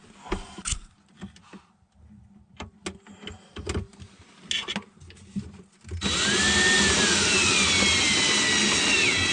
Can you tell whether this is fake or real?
real